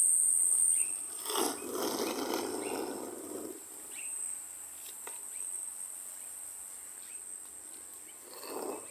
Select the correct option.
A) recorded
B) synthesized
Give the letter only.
A